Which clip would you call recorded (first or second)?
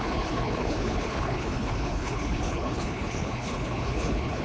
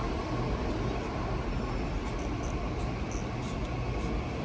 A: second